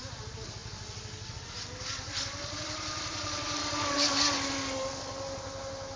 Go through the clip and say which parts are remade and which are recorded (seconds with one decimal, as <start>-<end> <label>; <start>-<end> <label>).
0.0-3.6 recorded; 3.6-4.1 remade; 4.1-6.0 recorded